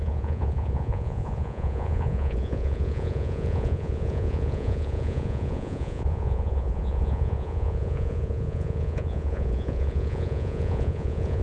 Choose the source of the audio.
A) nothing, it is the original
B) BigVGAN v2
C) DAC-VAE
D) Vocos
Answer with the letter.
D